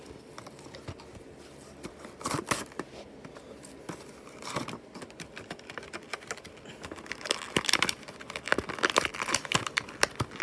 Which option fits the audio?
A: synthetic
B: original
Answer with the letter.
B